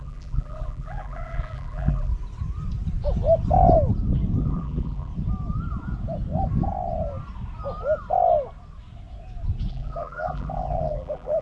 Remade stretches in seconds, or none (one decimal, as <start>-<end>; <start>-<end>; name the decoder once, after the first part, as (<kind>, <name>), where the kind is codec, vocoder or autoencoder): 0.0-2.1 (vocoder, BigVGAN v2); 4.4-5.1; 9.7-11.4